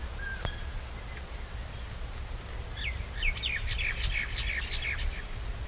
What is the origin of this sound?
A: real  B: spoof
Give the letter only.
A